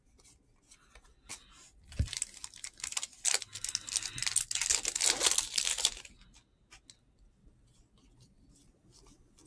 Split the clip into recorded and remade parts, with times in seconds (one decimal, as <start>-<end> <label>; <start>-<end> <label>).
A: 0.0-9.5 recorded

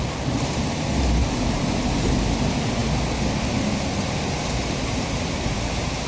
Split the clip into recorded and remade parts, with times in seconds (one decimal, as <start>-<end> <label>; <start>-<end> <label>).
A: 0.0-1.2 recorded; 1.2-2.2 remade; 2.2-6.1 recorded